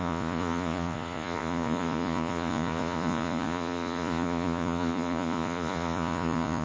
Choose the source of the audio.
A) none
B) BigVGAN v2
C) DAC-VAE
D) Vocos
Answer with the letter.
D